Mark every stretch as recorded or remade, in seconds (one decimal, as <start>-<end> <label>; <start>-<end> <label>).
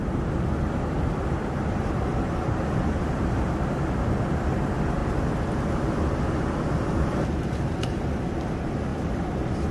0.0-5.0 remade; 5.0-6.9 recorded; 6.9-9.7 remade